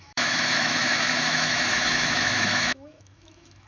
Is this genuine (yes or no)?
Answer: no